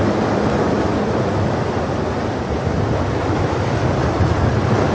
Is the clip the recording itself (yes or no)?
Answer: yes